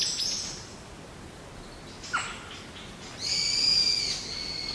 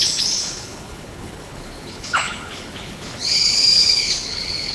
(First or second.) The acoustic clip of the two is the first